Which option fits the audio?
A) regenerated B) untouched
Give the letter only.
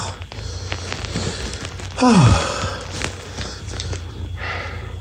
B